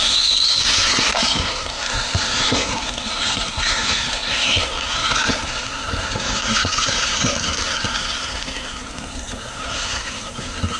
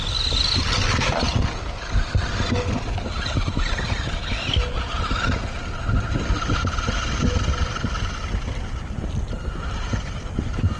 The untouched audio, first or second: second